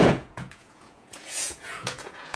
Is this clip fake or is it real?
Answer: fake